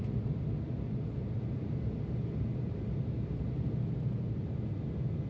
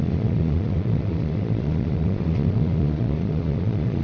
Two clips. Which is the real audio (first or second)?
first